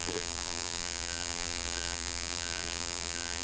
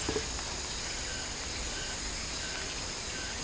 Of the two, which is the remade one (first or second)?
first